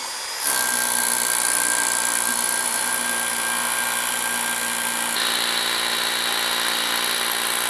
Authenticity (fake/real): real